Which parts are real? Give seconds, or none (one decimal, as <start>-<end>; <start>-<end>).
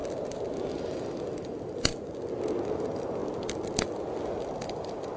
0.0-0.7; 1.9-2.7; 3.2-4.3